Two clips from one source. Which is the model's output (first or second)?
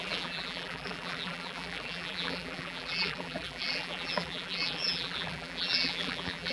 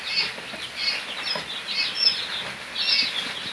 first